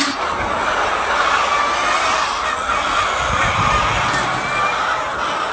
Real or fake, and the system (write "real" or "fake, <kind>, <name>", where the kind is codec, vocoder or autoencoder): real